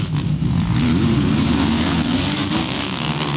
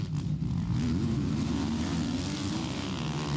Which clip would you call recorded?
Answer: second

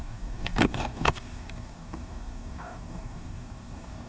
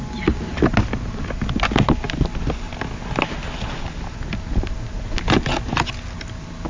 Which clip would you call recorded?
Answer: second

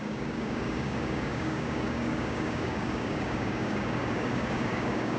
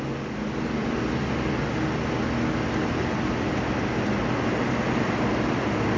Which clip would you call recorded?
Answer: second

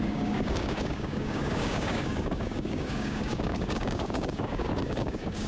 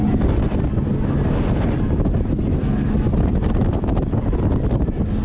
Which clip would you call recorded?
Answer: second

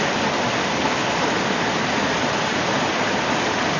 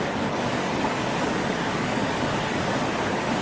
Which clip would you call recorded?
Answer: first